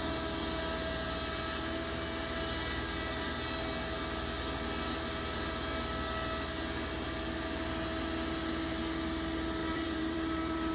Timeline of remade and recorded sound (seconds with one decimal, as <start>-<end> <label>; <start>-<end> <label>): 0.0-9.6 recorded; 9.6-10.7 remade